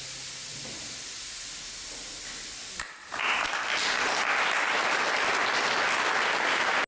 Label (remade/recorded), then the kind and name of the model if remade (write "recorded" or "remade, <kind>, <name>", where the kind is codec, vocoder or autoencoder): recorded